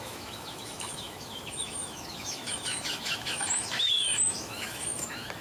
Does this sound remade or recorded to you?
remade